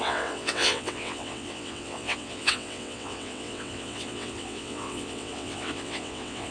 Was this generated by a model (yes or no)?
yes